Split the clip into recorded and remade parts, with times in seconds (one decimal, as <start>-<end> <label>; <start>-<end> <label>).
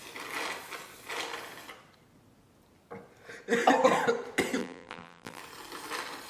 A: 0.0-4.6 recorded; 4.6-5.4 remade; 5.4-6.3 recorded